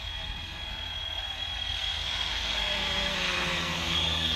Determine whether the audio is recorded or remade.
remade